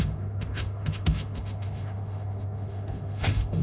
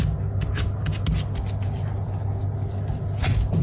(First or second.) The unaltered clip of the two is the second